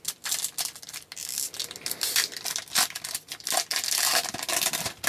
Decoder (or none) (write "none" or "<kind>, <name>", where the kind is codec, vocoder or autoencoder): none